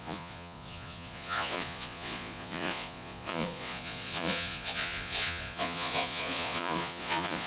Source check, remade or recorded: remade